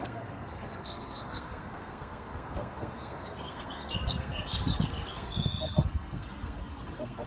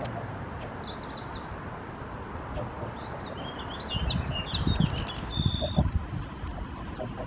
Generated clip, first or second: first